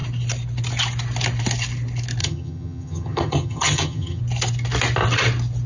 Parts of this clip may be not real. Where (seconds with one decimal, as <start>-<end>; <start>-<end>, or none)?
2.2-4.2